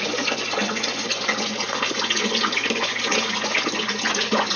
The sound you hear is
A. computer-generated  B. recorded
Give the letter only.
A